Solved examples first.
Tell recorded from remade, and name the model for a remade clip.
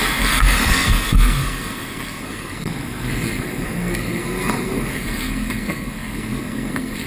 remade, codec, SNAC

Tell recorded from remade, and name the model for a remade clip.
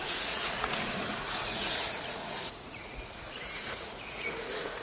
remade, vocoder, Vocos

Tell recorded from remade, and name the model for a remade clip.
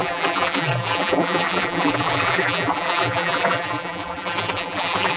remade, vocoder, BigVGAN v2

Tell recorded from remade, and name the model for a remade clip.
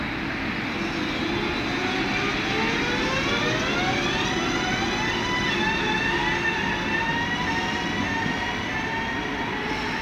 recorded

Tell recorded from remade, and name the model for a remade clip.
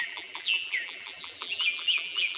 remade, vocoder, BigVGAN v2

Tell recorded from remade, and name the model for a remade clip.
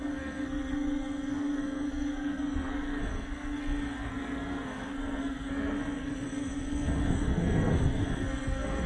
remade, codec, SNAC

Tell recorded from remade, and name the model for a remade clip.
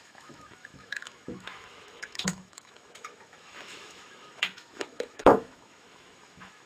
remade, autoencoder, DAC-VAE